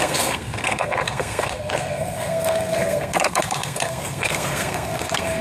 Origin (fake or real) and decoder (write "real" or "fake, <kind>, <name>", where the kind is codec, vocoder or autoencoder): fake, codec, SNAC